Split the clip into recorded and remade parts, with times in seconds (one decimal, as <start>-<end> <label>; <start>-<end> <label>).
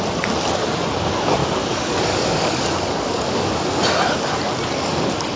0.0-1.4 recorded; 1.4-3.5 remade; 3.5-5.4 recorded